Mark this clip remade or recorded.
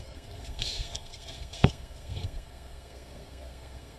remade